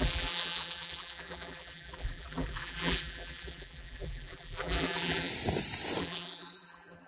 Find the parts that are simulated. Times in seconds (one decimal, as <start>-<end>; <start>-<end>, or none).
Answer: 0.0-5.3; 6.0-7.1